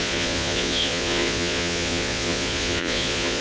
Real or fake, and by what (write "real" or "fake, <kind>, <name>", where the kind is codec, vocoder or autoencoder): fake, vocoder, Vocos